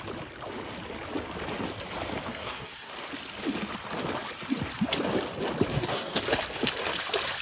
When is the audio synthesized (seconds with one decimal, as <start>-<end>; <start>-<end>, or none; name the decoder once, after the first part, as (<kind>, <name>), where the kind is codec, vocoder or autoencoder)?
2.3-2.9 (codec, SNAC); 5.7-6.2